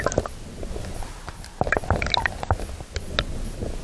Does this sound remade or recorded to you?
recorded